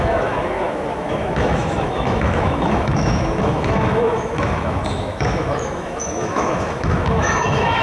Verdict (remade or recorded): remade